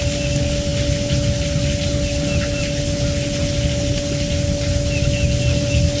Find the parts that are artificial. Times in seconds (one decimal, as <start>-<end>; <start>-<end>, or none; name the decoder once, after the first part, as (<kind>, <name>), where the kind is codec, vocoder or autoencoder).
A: none